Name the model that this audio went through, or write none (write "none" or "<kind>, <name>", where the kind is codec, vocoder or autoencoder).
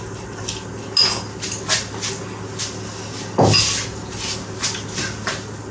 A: none